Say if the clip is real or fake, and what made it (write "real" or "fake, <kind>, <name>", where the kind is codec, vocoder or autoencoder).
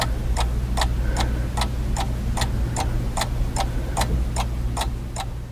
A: real